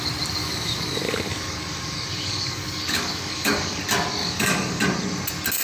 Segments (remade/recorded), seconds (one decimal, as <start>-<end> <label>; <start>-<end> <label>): 0.0-0.4 recorded; 0.4-3.8 remade; 3.8-4.2 recorded; 4.2-4.8 remade; 4.8-5.6 recorded